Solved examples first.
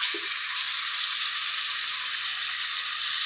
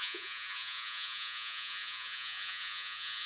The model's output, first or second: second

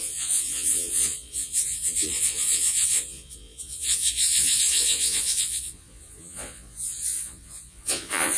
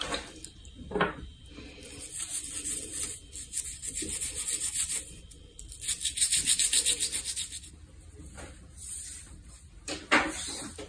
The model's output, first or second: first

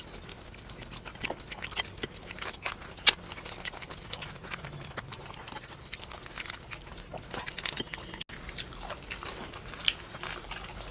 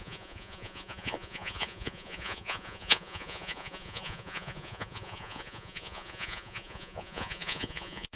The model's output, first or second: second